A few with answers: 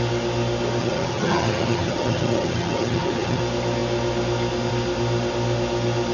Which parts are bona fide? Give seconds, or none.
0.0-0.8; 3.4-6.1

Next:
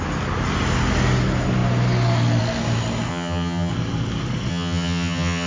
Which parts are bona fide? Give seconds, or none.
0.0-3.1; 3.7-4.5